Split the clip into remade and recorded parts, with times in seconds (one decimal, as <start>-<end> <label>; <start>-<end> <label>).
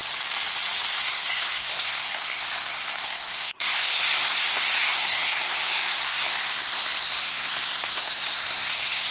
0.0-0.9 recorded; 0.9-9.1 remade